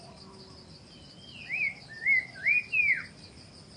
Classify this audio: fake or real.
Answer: real